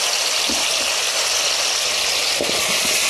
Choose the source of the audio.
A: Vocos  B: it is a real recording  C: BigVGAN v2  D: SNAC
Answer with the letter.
B